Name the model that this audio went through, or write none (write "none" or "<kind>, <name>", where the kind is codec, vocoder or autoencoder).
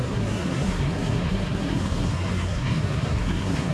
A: codec, SNAC